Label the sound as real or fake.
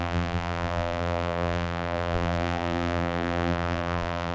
fake